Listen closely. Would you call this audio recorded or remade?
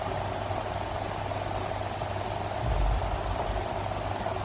recorded